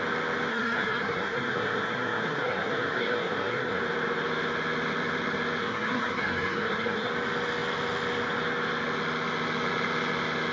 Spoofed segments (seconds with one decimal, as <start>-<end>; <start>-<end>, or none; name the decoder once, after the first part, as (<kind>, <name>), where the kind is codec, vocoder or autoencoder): 0.5-3.8 (codec, SNAC); 5.6-7.1